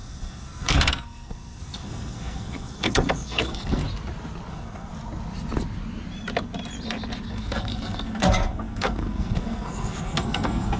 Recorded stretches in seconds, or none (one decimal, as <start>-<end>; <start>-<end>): 3.8-4.5; 4.9-7.3